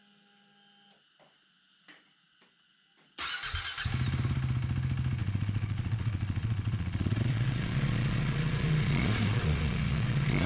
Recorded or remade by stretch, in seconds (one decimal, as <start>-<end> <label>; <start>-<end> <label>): 0.0-5.2 recorded; 5.2-10.5 remade